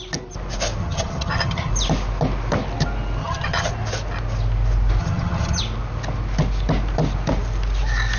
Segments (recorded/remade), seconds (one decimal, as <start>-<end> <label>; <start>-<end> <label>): 0.0-0.8 recorded; 0.8-1.7 remade; 1.7-3.2 recorded; 3.2-3.7 remade; 3.7-5.0 recorded; 5.0-5.6 remade; 5.6-8.2 recorded